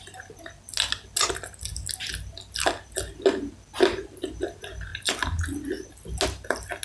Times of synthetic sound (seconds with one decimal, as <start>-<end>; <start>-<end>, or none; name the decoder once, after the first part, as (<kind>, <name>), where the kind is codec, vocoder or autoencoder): none